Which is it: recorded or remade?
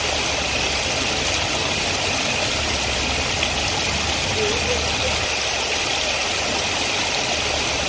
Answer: recorded